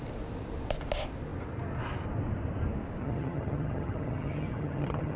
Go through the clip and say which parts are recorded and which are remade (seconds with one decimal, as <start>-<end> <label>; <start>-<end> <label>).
0.0-3.0 recorded; 3.0-5.2 remade